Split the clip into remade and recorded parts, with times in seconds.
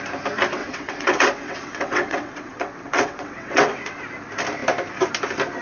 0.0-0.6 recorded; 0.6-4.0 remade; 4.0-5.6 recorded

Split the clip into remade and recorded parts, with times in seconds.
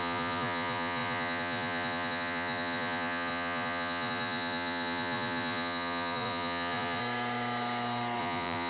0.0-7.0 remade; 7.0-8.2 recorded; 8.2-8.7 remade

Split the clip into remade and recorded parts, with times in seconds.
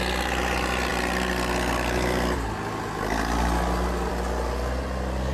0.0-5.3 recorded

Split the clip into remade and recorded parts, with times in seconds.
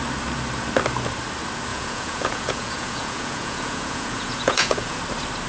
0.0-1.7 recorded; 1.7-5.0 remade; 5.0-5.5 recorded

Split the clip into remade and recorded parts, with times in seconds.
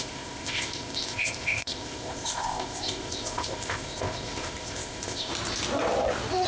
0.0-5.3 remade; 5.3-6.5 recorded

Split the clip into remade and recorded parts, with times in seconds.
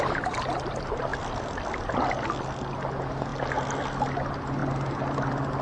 0.0-5.6 recorded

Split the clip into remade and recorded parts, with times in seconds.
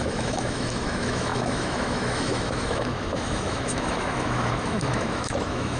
0.0-5.8 remade